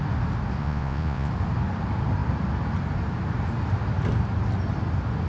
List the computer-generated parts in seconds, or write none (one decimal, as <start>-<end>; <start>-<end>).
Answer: 0.6-1.3